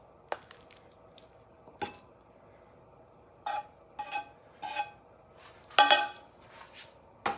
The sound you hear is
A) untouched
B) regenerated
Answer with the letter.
A